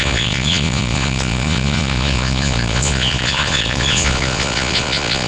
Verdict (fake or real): fake